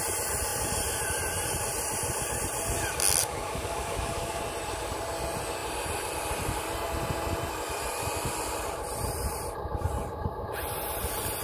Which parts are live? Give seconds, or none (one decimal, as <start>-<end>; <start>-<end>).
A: 0.0-3.2; 4.4-11.4